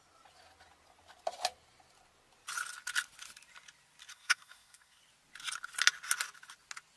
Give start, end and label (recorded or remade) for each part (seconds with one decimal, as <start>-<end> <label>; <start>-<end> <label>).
0.0-4.1 recorded; 4.1-5.0 remade; 5.0-7.0 recorded